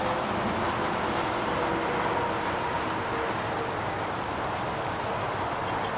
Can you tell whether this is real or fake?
real